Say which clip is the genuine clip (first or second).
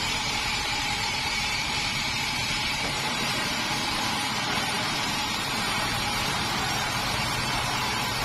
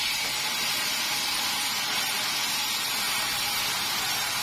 second